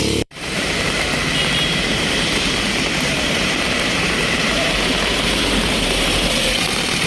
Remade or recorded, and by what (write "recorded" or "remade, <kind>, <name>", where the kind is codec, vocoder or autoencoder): remade, vocoder, BigVGAN v2